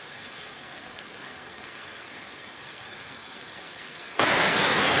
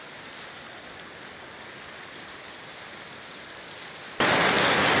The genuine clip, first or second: second